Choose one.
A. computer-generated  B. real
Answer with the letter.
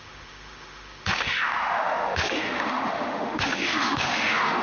A